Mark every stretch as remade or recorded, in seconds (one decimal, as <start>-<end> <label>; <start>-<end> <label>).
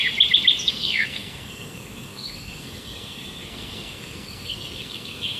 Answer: 0.0-0.7 recorded; 0.7-5.4 remade